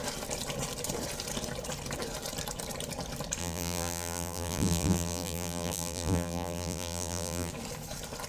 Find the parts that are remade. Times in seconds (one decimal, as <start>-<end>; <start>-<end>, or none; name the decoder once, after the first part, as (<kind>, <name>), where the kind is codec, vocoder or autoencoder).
3.4-7.5 (vocoder, BigVGAN v2)